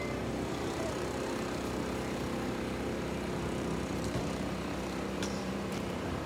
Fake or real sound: fake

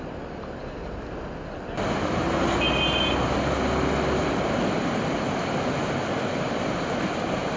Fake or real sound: real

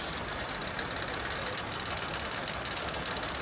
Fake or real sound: real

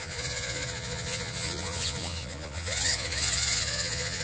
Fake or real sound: fake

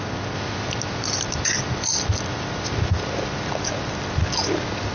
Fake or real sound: real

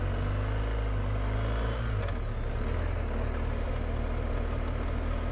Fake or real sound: real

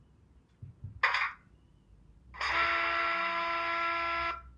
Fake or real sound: real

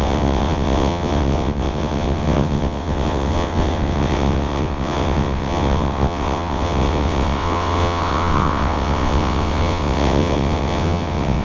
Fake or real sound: fake